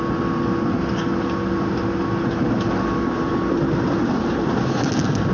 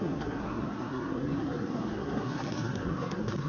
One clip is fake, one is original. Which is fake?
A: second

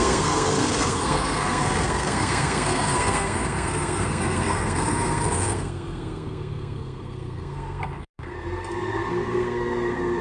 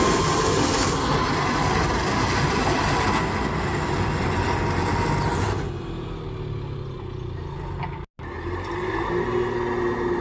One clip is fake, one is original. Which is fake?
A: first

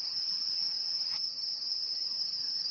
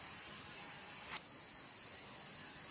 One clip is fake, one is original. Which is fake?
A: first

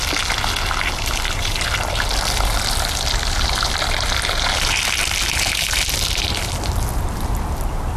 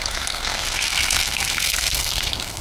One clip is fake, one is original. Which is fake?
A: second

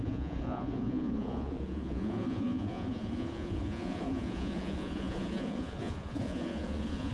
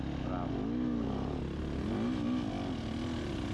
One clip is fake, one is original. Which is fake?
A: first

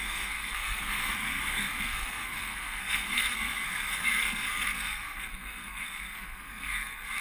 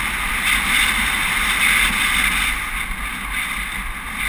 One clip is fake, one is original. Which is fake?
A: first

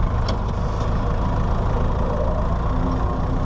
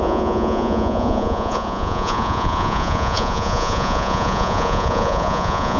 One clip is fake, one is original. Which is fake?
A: second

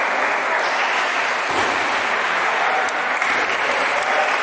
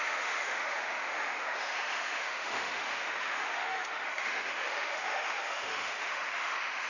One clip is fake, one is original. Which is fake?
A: second